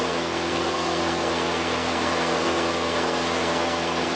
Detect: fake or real fake